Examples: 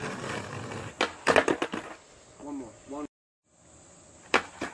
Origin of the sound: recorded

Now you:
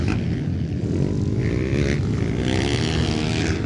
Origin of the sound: recorded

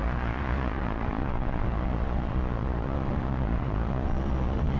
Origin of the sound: remade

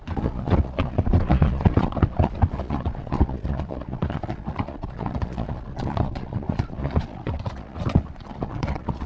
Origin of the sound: remade